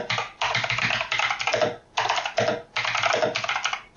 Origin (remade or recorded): recorded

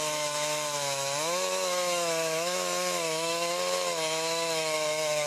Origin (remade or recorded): remade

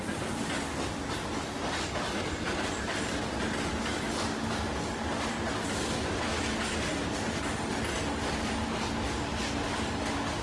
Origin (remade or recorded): recorded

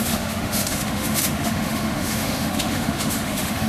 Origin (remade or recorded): remade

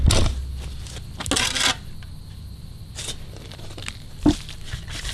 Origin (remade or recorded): recorded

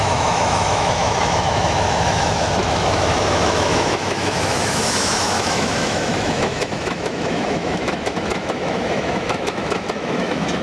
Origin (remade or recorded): remade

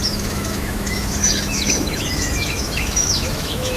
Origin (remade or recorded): remade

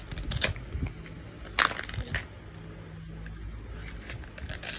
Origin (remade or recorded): recorded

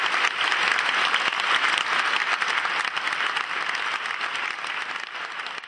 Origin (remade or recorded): recorded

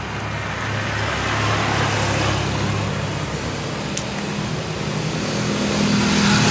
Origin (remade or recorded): recorded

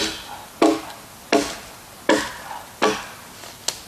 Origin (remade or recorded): recorded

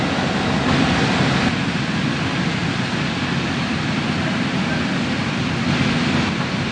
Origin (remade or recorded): recorded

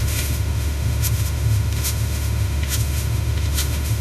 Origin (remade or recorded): remade